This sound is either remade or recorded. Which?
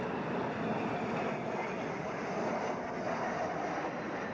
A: recorded